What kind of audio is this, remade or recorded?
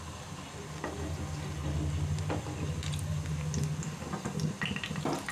recorded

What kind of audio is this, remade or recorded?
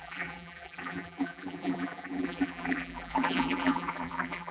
remade